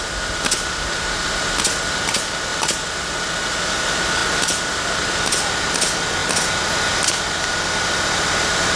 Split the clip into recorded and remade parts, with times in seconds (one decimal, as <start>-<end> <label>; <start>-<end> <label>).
0.0-8.8 recorded